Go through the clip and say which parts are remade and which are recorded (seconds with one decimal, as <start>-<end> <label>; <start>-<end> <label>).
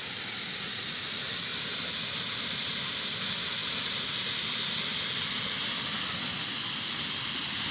0.0-7.7 recorded